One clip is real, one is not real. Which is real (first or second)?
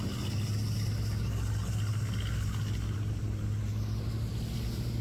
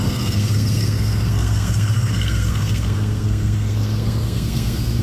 first